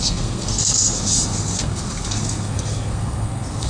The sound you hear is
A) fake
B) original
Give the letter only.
A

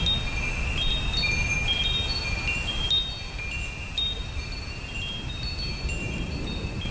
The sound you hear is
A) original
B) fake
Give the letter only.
A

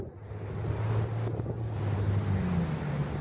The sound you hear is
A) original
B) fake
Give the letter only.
A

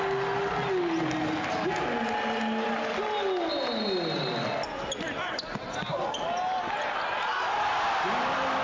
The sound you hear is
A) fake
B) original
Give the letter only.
B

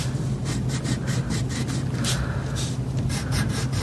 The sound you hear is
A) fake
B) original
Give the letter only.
B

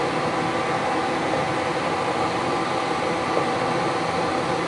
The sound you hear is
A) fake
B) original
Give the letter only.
B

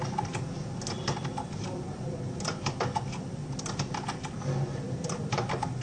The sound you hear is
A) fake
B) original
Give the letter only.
B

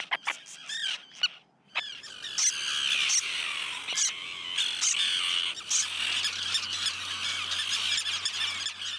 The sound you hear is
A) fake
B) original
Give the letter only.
B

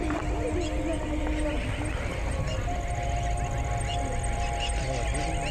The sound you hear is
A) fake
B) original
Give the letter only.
B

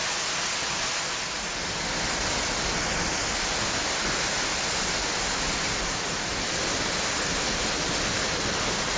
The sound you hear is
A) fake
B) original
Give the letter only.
B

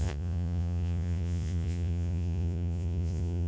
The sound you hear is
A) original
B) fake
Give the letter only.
B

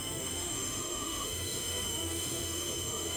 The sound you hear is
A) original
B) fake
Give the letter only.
B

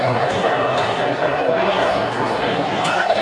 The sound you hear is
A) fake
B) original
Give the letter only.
A